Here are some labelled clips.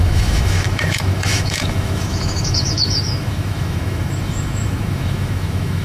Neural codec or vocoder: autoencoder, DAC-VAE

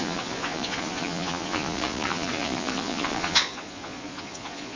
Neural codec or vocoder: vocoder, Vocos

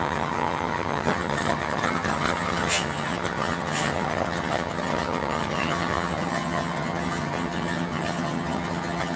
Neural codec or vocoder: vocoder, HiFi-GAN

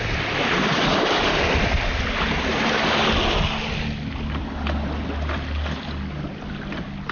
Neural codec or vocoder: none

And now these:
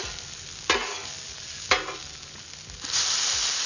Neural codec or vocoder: none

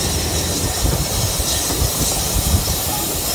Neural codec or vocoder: none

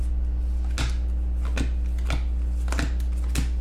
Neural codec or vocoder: none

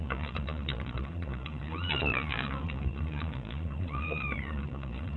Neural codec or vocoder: vocoder, Vocos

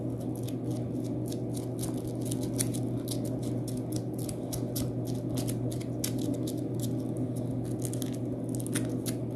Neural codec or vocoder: none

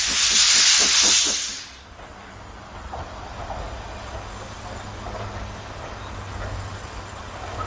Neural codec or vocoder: none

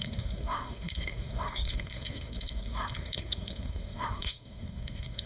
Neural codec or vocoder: codec, SNAC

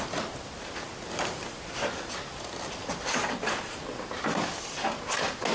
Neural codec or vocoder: none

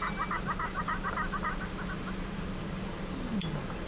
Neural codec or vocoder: none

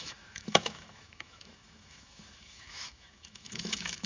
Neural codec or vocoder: autoencoder, DAC-VAE